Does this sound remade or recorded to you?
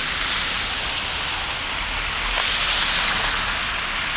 recorded